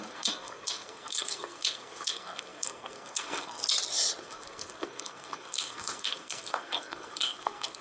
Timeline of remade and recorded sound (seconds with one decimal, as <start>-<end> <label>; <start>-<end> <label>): 0.0-3.6 remade; 3.6-4.2 recorded; 4.2-7.8 remade